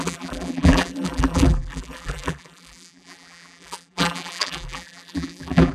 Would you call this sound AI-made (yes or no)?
yes